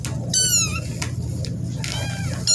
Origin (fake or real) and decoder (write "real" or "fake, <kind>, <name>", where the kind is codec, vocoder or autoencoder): real